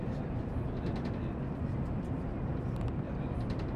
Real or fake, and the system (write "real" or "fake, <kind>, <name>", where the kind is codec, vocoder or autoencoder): real